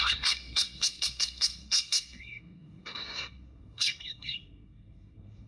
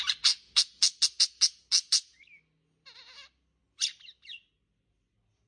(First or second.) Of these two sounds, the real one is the second